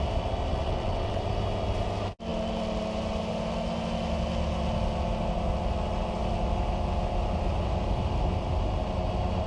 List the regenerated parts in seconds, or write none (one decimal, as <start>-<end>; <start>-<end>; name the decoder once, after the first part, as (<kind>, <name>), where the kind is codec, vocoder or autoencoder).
0.5-1.2 (vocoder, WaveNeXt)